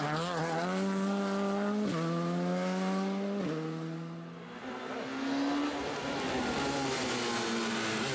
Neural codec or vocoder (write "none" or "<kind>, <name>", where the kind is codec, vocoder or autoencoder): none